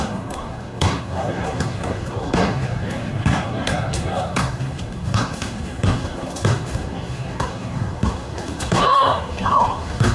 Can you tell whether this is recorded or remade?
remade